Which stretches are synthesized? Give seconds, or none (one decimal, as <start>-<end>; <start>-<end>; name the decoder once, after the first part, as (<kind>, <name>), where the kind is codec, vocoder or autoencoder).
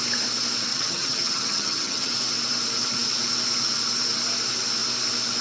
0.7-2.1 (vocoder, HiFi-GAN)